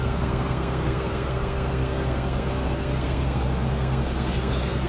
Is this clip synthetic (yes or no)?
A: yes